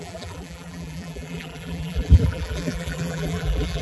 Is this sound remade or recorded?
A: remade